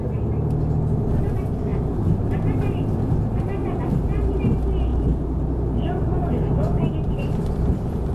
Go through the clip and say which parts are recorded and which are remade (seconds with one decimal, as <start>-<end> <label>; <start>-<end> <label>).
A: 0.0-1.7 recorded; 1.7-2.6 remade; 2.6-3.6 recorded; 3.6-4.5 remade; 4.5-4.9 recorded; 4.9-8.1 remade